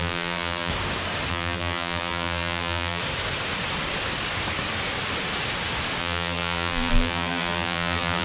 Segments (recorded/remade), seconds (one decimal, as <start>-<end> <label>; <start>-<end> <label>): 0.0-0.7 remade; 0.7-1.3 recorded; 1.3-3.0 remade; 3.0-6.0 recorded; 6.0-8.2 remade